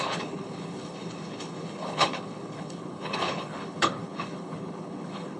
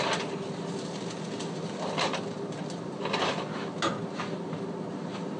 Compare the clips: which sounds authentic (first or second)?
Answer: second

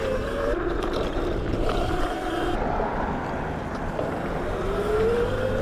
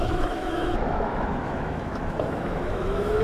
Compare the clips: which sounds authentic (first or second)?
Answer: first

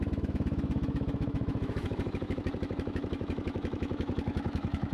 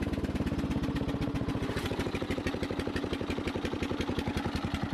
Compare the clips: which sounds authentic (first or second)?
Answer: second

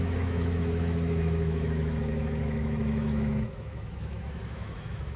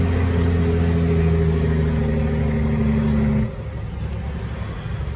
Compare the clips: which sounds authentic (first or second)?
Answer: second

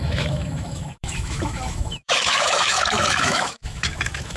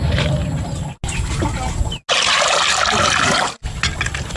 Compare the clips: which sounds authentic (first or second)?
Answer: second